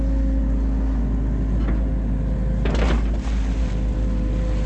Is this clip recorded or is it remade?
recorded